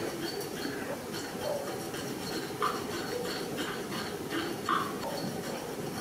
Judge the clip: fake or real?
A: real